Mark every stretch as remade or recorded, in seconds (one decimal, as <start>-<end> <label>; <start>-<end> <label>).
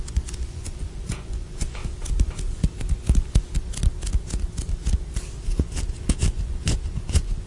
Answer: 0.0-1.8 remade; 1.8-6.3 recorded; 6.3-7.5 remade